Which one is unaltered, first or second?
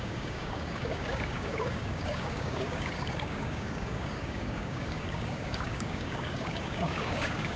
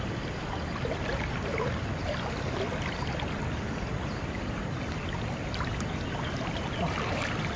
second